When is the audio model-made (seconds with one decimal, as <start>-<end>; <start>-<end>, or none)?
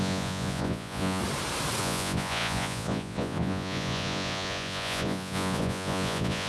0.0-1.2; 1.8-6.5